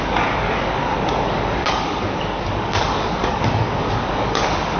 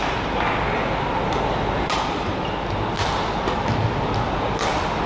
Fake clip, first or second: first